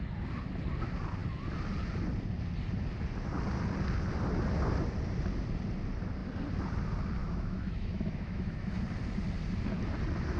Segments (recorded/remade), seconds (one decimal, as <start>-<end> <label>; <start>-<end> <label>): 0.0-7.2 recorded; 7.2-8.8 remade; 8.8-10.4 recorded